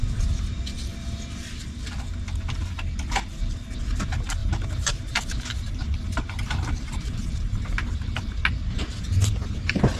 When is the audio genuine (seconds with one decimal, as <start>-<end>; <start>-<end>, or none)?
0.0-0.9; 1.9-4.4; 7.4-10.0